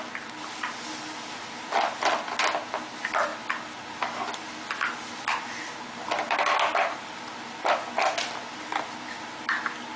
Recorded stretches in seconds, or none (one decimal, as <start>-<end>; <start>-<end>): 0.0-10.0